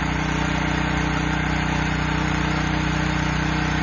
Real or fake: real